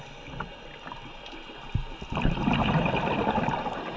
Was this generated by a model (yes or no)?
no